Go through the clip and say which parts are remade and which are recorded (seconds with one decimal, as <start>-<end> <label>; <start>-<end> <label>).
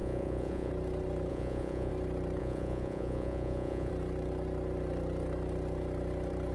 0.0-0.7 remade; 0.7-1.3 recorded; 1.3-1.9 remade; 1.9-2.4 recorded; 2.4-3.9 remade; 3.9-6.5 recorded